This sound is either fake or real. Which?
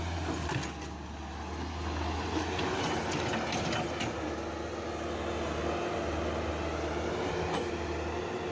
real